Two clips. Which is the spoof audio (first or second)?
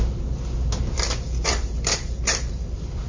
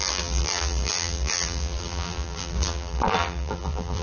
second